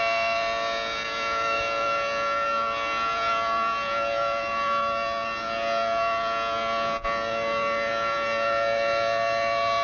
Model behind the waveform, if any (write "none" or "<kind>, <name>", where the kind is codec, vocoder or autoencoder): none